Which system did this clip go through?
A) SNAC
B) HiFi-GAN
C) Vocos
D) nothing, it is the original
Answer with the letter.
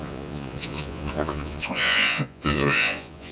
C